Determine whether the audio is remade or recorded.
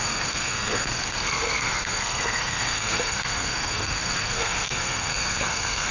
remade